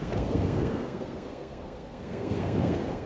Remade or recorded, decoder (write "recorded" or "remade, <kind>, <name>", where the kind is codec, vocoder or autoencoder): remade, codec, SNAC